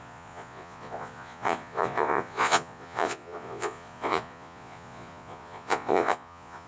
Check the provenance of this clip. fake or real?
fake